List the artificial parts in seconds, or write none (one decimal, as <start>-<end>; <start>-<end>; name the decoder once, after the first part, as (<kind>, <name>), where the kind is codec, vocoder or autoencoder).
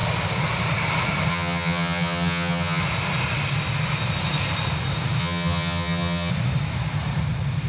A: 1.3-2.8 (vocoder, HiFi-GAN); 5.2-6.3